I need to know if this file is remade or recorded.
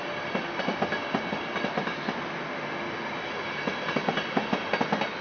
recorded